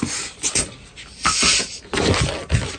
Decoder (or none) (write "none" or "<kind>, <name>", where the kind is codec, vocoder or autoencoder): none